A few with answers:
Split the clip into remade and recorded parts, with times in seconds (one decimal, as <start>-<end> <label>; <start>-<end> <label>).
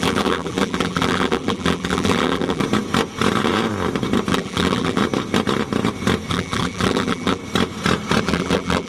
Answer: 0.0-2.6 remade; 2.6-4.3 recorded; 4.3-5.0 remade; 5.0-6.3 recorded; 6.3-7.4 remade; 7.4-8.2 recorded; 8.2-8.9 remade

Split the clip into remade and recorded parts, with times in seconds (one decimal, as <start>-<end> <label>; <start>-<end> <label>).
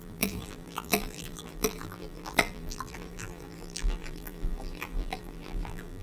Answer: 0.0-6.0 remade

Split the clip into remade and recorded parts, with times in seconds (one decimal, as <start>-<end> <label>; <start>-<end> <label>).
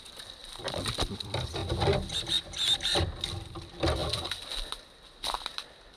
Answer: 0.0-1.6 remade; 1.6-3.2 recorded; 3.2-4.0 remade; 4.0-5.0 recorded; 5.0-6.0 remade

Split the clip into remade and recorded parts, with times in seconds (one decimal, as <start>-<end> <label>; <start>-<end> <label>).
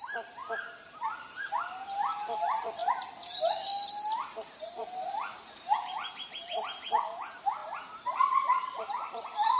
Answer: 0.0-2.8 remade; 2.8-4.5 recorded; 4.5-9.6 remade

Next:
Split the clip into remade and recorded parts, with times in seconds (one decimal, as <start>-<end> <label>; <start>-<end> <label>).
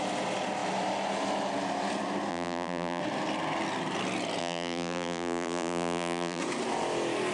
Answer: 0.0-2.3 recorded; 2.3-3.0 remade; 3.0-4.4 recorded; 4.4-6.4 remade; 6.4-7.3 recorded